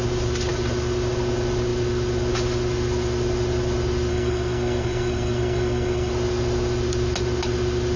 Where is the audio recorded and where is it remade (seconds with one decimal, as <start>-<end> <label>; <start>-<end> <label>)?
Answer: 0.0-4.1 recorded; 4.1-6.1 remade; 6.1-8.0 recorded